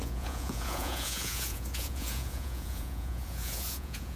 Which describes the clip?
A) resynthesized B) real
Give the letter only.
A